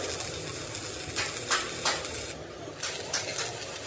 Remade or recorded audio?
recorded